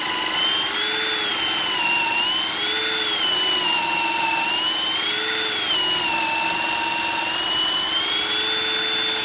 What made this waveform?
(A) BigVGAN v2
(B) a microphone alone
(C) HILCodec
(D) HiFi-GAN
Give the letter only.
B